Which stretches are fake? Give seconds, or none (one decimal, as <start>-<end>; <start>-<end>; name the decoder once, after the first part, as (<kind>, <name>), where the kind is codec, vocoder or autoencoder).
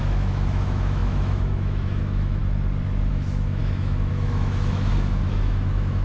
0.0-2.4 (autoencoder, DAC-VAE); 3.1-6.0